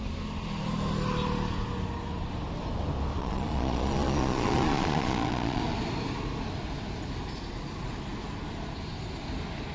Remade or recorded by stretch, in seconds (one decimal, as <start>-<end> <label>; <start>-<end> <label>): 0.0-3.2 recorded; 3.2-5.6 remade; 5.6-9.7 recorded

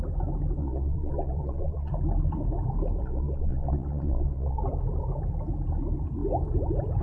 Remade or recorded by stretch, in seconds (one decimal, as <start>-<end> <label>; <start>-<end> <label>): 0.0-0.6 recorded; 0.6-1.9 remade; 1.9-3.0 recorded; 3.0-4.6 remade; 4.6-7.0 recorded

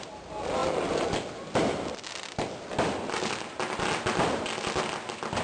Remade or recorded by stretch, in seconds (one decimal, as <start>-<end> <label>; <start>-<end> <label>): 0.0-5.4 recorded

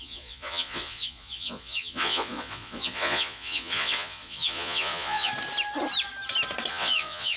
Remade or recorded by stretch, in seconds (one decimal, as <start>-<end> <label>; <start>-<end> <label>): 0.0-5.3 remade; 5.3-6.7 recorded; 6.7-7.4 remade

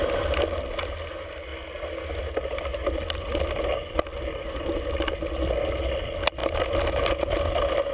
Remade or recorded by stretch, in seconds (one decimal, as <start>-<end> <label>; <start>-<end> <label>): 0.0-7.9 recorded

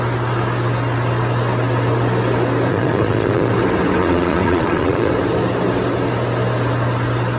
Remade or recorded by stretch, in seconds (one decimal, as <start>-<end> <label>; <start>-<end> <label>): 0.0-2.7 recorded; 2.7-3.5 remade; 3.5-4.0 recorded; 4.0-5.1 remade; 5.1-7.4 recorded

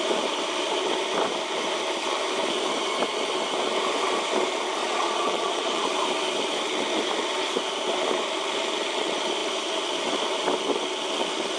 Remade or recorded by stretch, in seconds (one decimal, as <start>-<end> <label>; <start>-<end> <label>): 0.0-4.8 recorded; 4.8-5.8 remade; 5.8-11.6 recorded